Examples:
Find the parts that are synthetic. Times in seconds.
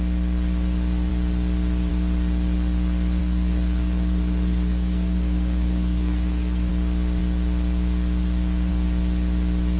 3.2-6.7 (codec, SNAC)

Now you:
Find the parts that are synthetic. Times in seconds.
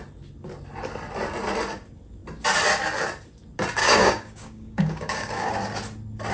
3.8-5.5 (codec, DAC)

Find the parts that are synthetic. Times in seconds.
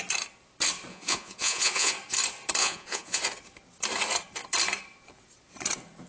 0.9-1.9 (vocoder, Vocos); 2.6-3.2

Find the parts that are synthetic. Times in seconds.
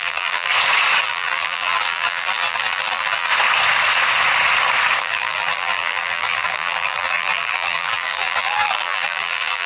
0.0-0.5 (vocoder, BigVGAN v2); 1.0-3.3; 5.0-9.7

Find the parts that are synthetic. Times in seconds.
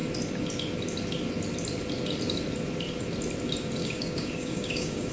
3.8-5.1 (codec, DAC)